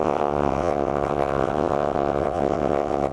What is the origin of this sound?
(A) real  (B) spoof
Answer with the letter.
B